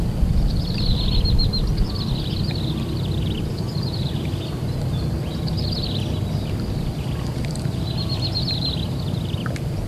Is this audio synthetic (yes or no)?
no